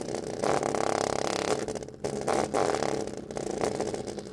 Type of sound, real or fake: real